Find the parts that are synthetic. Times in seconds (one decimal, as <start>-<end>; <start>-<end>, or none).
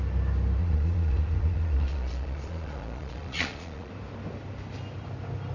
0.6-3.9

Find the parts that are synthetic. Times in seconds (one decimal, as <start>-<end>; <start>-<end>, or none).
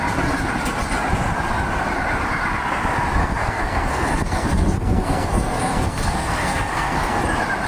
3.2-7.2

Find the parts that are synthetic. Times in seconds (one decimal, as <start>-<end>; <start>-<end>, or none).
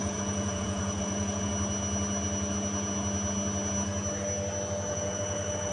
0.0-1.5; 4.9-5.7